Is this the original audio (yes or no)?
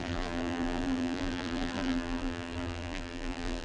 no